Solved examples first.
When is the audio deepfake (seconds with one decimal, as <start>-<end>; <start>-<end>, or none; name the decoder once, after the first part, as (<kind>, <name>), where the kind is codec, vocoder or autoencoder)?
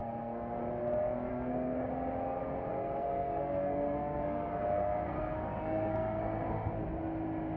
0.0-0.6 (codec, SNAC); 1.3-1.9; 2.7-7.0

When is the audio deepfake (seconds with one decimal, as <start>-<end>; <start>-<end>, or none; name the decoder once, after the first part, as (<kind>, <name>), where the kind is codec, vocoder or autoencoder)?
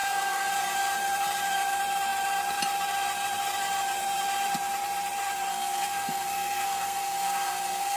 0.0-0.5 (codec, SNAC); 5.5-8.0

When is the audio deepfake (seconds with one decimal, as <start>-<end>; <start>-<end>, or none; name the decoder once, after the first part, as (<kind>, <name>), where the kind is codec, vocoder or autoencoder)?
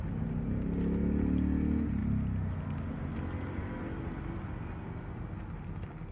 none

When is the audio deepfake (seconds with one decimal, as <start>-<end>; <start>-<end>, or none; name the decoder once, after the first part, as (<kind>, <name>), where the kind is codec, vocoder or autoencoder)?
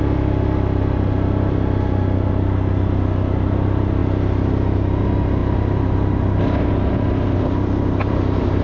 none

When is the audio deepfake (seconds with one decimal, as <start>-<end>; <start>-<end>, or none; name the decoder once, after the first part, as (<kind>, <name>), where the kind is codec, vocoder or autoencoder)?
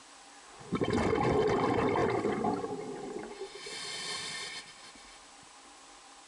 none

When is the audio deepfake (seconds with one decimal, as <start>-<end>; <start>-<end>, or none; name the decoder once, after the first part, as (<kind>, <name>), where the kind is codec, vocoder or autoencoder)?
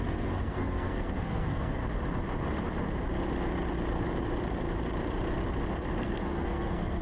0.0-1.8 (codec, SNAC); 6.0-7.0